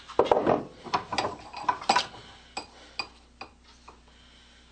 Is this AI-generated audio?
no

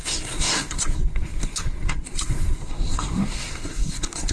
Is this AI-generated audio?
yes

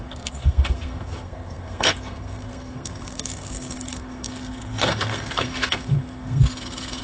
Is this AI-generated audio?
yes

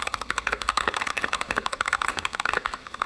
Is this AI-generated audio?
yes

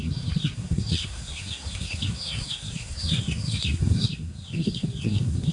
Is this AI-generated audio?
yes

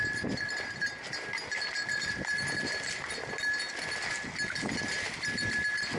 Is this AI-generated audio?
no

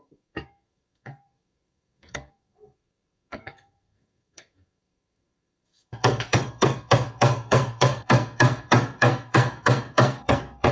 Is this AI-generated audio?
yes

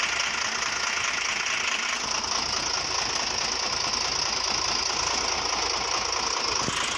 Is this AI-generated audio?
no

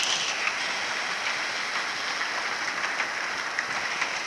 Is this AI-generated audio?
no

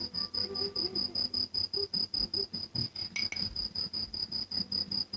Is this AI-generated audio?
no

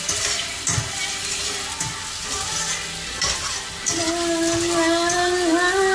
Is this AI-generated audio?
no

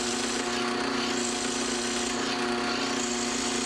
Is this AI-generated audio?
no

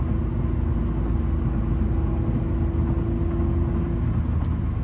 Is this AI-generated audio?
no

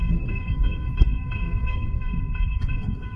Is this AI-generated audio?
yes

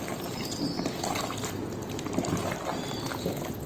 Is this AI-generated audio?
no